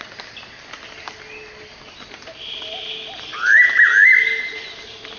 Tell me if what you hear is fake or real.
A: real